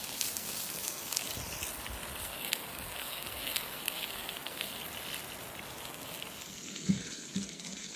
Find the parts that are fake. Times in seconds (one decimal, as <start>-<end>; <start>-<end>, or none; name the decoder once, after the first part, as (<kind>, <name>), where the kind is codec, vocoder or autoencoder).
0.0-1.3 (codec, SNAC); 2.2-4.8; 5.8-8.0